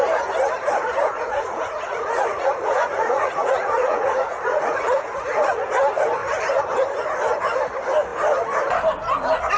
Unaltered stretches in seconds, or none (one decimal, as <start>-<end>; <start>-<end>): 0.0-1.0; 5.7-9.6